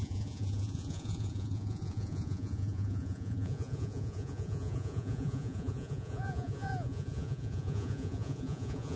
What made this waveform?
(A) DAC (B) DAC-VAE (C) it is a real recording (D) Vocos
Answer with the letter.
D